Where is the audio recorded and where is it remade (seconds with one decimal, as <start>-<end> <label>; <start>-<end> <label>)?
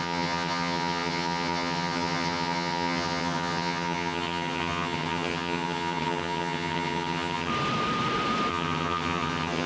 0.0-7.5 remade; 7.5-8.5 recorded; 8.5-9.7 remade